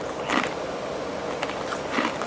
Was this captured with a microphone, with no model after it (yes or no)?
yes